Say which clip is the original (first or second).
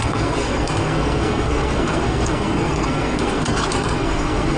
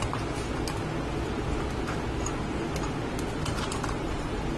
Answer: second